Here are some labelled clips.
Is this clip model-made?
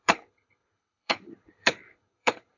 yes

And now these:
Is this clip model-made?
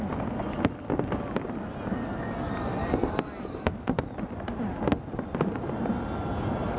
no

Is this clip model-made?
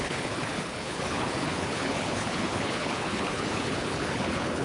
yes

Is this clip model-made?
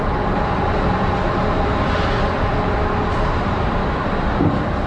no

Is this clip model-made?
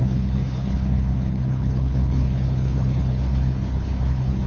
yes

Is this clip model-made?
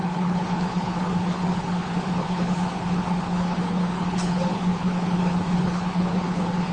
yes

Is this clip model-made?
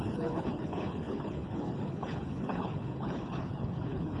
yes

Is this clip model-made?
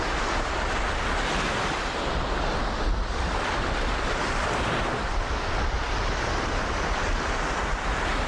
no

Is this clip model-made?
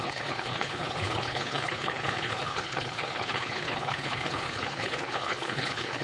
yes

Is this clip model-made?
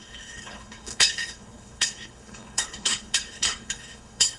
yes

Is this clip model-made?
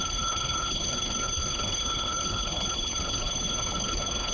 yes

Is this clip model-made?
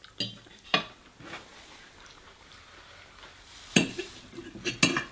no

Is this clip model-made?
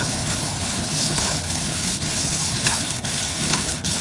yes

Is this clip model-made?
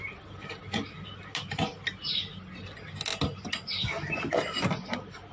no